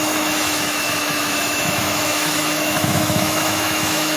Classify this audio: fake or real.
fake